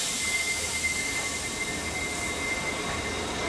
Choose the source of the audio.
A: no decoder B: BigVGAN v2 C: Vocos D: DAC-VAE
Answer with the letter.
A